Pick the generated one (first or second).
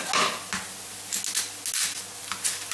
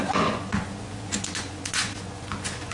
second